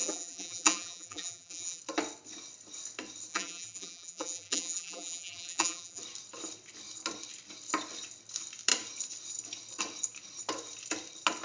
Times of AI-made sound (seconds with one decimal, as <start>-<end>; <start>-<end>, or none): 0.0-1.8; 3.3-6.0